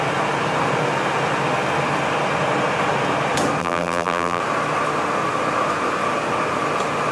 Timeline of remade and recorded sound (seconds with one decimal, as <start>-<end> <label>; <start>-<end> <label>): 0.0-3.6 recorded; 3.6-4.4 remade; 4.4-7.1 recorded